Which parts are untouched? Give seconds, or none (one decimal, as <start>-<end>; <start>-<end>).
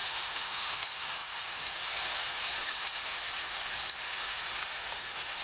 none